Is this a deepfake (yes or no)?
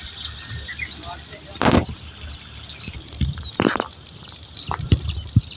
no